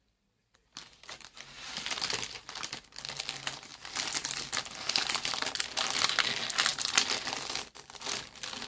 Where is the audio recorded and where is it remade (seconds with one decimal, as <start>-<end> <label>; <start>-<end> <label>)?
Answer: 0.0-6.7 recorded; 6.7-8.7 remade